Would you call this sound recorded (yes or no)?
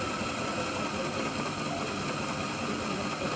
yes